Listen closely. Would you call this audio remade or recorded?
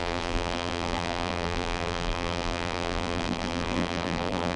remade